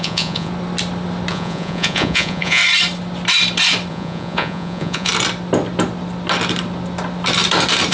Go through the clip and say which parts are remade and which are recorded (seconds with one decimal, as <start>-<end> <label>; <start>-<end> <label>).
0.0-0.5 remade; 0.5-1.3 recorded; 1.3-2.6 remade; 2.6-3.9 recorded; 3.9-5.1 remade; 5.1-7.9 recorded